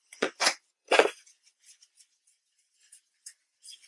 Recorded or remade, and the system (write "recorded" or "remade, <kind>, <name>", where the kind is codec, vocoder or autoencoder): remade, vocoder, Vocos